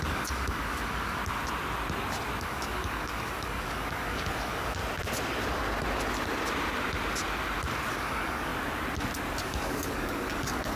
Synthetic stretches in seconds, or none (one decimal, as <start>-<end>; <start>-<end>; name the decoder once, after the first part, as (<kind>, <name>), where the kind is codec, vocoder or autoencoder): 0.0-1.2 (codec, DAC); 2.4-4.8; 7.9-8.5; 9.4-10.8